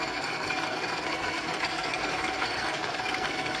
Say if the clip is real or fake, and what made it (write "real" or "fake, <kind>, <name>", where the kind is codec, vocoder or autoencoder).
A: fake, codec, SNAC